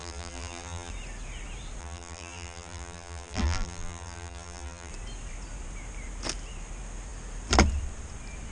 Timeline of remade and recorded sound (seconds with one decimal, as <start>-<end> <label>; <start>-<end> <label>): 0.0-0.9 remade; 0.9-1.8 recorded; 1.8-4.9 remade; 4.9-8.5 recorded